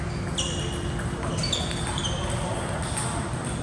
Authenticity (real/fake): real